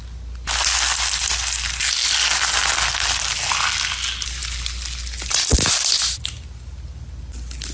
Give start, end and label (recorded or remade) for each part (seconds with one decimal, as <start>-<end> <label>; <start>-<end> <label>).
0.0-7.7 recorded